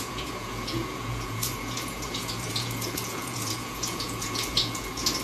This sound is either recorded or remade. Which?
remade